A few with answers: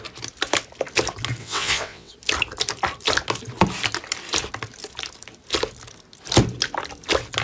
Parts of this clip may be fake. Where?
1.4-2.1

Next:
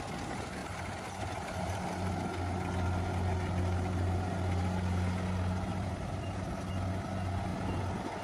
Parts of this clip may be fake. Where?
0.6-1.9; 5.7-6.5

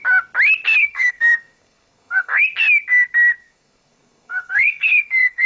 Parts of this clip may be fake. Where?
0.8-2.4; 3.4-5.5

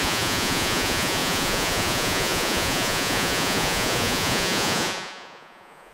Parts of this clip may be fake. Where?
0.0-5.9

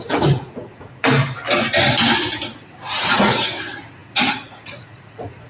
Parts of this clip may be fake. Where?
0.0-1.0; 2.6-5.5

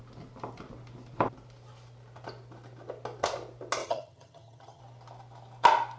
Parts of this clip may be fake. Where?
3.8-4.8

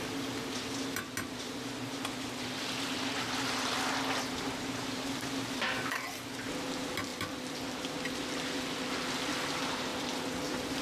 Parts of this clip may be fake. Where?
7.1-7.6; 9.9-10.8